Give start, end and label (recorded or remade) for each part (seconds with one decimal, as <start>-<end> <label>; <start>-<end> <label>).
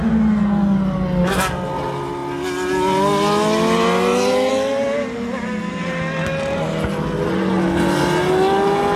0.0-9.0 recorded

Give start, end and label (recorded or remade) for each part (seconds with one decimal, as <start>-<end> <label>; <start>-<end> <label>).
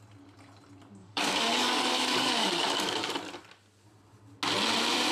0.0-1.0 recorded; 1.0-3.1 remade; 3.1-5.1 recorded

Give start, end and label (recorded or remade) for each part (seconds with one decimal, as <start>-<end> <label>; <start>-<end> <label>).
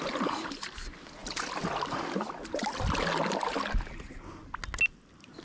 0.0-5.4 recorded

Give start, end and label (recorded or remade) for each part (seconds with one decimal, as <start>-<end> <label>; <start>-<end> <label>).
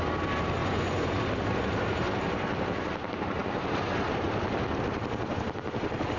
0.0-0.6 recorded; 0.6-1.2 remade; 1.2-6.2 recorded